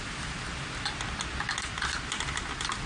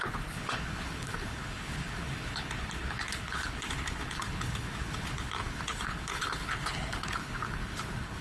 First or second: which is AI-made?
second